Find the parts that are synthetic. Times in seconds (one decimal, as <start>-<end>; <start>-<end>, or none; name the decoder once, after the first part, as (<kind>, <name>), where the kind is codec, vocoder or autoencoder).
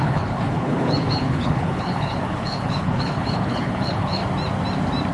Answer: 0.0-4.2 (codec, HILCodec)